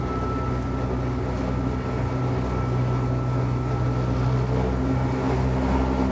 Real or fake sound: real